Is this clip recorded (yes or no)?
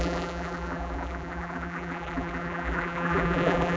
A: no